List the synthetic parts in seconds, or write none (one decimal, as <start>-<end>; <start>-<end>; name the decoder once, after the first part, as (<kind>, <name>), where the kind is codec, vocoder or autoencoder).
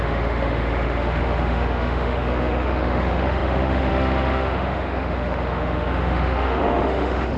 0.0-7.4 (autoencoder, DAC-VAE)